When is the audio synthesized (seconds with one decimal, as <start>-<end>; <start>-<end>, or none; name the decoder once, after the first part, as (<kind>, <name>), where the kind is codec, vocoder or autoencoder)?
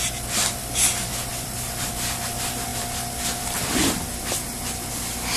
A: 1.3-1.9 (vocoder, BigVGAN v2); 2.7-4.9